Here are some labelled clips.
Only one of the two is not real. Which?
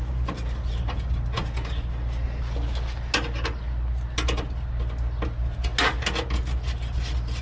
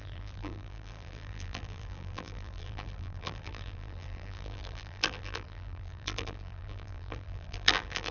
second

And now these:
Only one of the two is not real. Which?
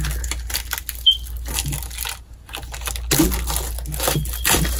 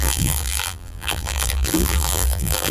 second